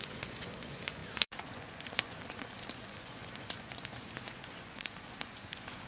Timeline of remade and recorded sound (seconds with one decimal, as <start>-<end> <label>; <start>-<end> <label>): 0.0-5.9 remade